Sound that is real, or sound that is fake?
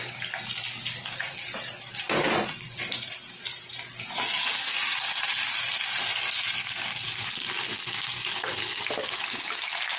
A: real